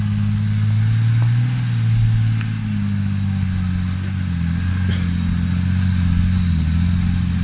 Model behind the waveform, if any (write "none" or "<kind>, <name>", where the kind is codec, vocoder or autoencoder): none